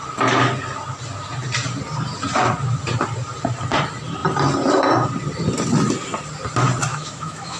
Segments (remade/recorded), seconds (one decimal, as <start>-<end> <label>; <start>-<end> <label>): 0.0-6.9 recorded; 6.9-7.6 remade